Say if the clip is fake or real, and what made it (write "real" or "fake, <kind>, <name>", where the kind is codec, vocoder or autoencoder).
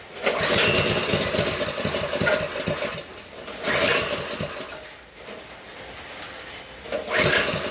real